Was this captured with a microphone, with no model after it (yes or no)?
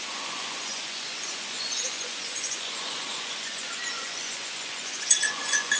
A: no